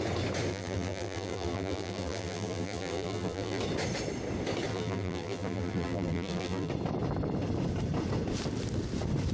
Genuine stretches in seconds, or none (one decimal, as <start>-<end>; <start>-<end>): 0.0-0.5; 3.6-4.7; 6.7-9.3